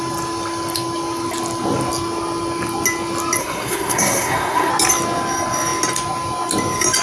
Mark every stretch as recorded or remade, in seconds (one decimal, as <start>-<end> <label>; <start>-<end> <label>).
0.0-3.4 recorded; 3.4-4.7 remade; 4.7-7.0 recorded

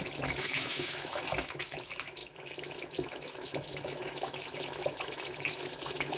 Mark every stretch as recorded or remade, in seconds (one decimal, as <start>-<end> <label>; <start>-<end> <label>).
0.0-6.2 remade